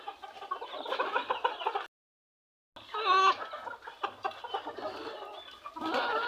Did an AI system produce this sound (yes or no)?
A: no